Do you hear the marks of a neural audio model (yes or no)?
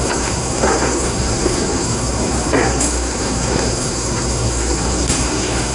yes